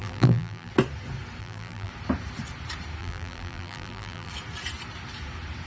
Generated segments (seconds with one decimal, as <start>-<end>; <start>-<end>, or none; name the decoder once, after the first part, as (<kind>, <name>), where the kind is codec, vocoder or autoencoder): 0.0-0.7 (vocoder, BigVGAN v2); 1.4-1.9; 3.0-4.3